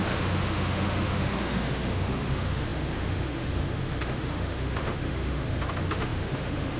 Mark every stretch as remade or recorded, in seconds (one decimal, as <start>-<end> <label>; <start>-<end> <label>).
0.0-6.8 remade